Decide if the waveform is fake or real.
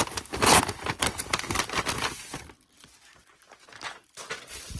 real